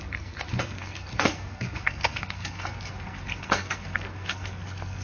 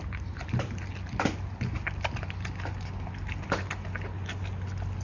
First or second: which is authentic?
second